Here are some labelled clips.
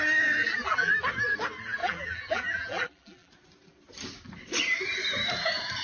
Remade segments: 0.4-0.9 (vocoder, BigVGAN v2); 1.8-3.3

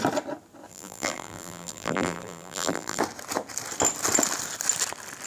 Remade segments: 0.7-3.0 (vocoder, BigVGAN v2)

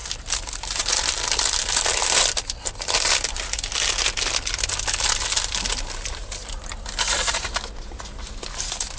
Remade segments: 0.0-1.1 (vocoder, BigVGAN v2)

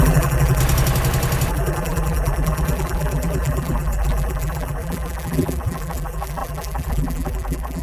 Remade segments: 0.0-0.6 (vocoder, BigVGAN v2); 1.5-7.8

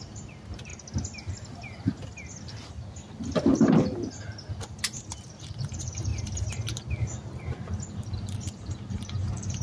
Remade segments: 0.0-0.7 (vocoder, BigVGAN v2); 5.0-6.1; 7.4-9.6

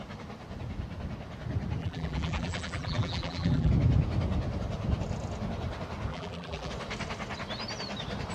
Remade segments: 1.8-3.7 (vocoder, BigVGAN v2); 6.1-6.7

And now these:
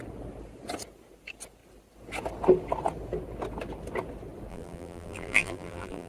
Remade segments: 4.5-6.1 (vocoder, BigVGAN v2)

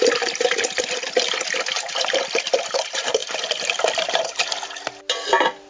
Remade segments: 3.2-4.1 (vocoder, BigVGAN v2)